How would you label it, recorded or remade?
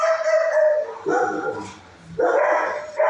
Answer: recorded